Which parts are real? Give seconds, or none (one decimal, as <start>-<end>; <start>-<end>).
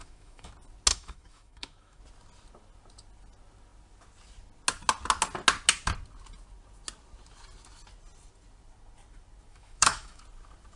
0.5-0.9; 2.0-9.5; 10.2-10.8